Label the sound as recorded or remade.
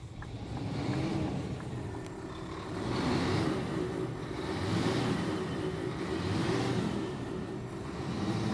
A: remade